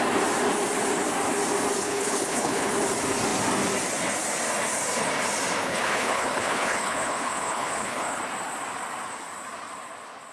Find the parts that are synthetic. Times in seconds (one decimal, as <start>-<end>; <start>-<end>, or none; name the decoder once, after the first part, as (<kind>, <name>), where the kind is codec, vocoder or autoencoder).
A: 1.8-2.7 (codec, HILCodec); 5.6-8.2

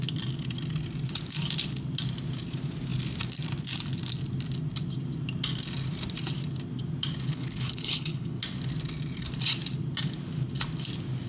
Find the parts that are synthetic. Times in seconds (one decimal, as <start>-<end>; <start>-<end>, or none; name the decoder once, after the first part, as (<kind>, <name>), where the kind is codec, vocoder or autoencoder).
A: 7.3-8.4 (codec, HILCodec)

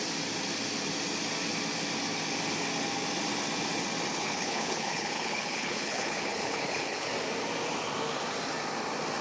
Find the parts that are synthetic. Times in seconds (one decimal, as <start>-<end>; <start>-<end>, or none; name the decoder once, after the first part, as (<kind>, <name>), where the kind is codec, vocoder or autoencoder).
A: 4.1-7.1 (codec, HILCodec)

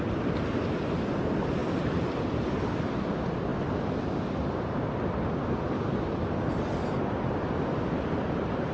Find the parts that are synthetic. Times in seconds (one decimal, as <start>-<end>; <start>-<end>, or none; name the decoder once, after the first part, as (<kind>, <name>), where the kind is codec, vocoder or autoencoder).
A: none

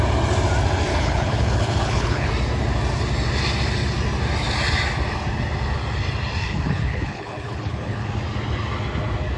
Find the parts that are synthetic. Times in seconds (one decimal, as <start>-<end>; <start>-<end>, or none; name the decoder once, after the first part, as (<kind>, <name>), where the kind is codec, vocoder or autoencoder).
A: 0.9-2.3 (codec, HILCodec); 6.4-8.1

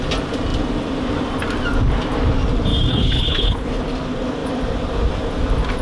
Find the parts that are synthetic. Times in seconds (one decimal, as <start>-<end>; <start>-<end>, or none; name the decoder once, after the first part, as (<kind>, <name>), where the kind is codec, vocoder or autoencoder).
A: 2.9-3.8 (codec, HILCodec)